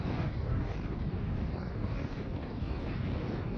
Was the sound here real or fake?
fake